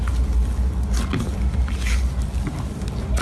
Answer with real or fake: real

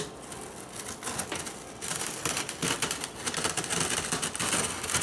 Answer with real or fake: real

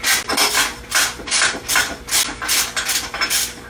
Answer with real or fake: real